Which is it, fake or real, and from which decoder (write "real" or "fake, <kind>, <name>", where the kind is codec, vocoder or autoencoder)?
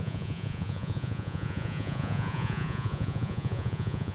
fake, vocoder, Vocos